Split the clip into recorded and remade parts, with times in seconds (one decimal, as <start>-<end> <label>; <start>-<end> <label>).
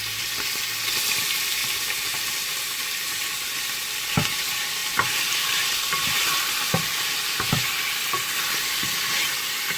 0.0-1.6 recorded; 1.6-2.6 remade; 2.6-4.8 recorded; 4.8-7.4 remade; 7.4-9.8 recorded